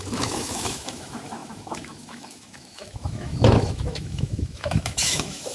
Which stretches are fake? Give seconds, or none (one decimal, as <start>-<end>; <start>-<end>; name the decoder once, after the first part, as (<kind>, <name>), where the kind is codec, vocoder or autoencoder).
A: 0.0-5.5 (autoencoder, DAC-VAE)